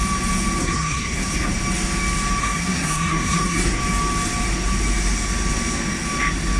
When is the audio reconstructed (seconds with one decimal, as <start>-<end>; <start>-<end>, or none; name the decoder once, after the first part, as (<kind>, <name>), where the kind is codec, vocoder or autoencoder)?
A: 0.6-1.5 (codec, SNAC); 2.4-3.8